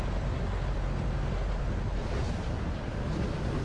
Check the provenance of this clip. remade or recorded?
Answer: recorded